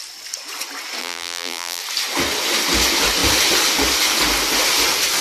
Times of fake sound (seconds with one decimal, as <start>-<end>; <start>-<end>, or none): 1.0-1.8